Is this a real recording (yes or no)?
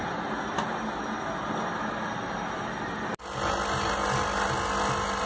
yes